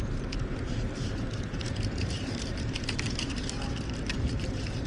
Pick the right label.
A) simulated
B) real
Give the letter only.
A